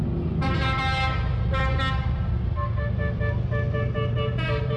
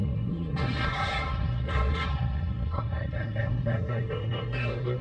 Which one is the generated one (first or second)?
second